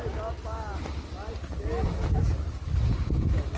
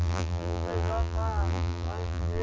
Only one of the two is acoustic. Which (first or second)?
first